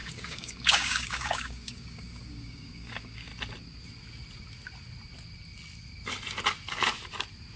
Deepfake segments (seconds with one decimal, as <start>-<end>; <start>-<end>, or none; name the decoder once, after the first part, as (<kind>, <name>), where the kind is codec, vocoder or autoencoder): 0.0-3.3 (codec, DAC)